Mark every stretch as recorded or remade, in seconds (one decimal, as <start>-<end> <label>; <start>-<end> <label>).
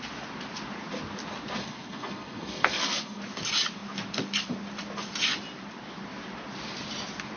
0.0-1.6 recorded; 1.6-3.2 remade; 3.2-7.4 recorded